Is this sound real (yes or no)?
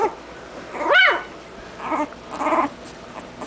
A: yes